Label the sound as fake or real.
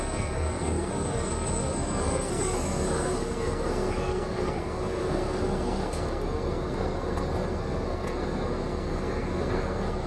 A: fake